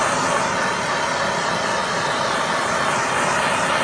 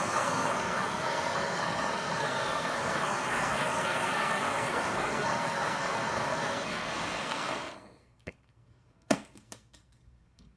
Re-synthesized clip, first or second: second